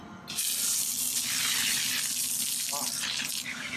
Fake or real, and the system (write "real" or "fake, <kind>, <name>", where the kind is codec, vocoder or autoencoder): real